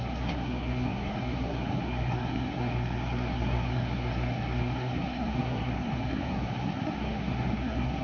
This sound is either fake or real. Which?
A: fake